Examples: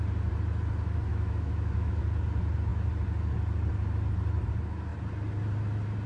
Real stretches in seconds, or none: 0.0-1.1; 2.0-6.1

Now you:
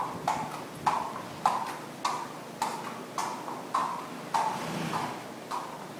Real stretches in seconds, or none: 0.0-6.0

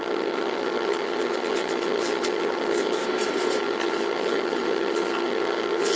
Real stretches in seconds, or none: 3.0-3.6

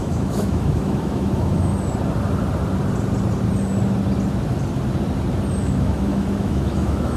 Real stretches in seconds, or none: 1.7-5.6

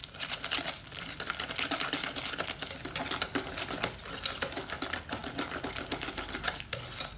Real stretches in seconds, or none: 0.0-7.2

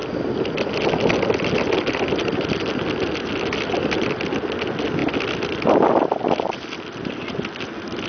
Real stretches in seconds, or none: 0.0-8.1